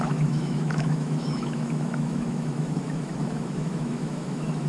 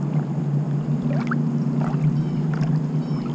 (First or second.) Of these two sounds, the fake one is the first